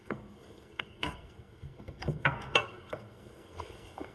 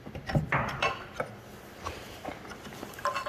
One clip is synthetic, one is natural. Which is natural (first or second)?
second